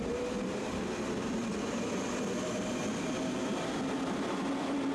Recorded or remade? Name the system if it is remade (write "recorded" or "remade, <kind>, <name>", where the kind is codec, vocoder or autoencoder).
remade, vocoder, BigVGAN v2